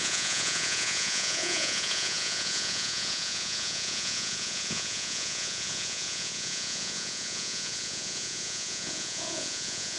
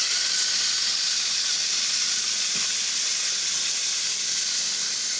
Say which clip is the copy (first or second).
first